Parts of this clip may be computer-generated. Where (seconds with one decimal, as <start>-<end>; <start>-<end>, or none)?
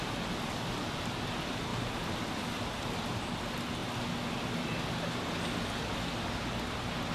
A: none